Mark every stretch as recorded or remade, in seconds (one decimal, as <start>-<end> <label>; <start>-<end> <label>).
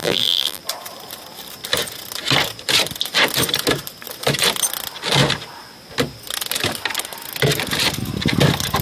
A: 0.0-0.6 remade; 0.6-8.8 recorded